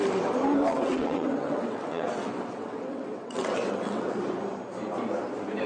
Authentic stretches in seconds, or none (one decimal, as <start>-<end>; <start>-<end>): 0.0-0.7; 4.1-5.7